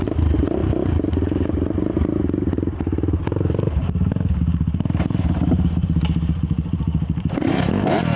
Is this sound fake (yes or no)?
yes